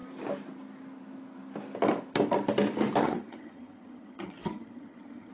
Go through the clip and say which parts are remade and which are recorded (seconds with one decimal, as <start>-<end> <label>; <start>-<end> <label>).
0.0-3.0 recorded; 3.0-5.3 remade